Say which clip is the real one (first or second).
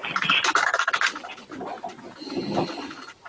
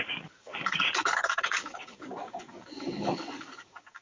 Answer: first